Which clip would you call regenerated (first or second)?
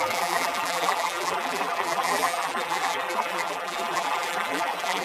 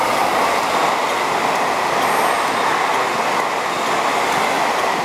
first